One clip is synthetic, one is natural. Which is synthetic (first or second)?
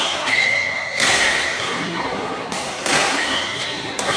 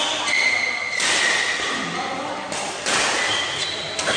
first